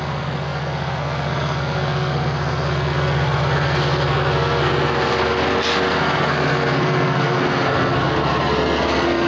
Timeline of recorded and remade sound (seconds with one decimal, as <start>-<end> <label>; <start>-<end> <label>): 0.0-9.3 remade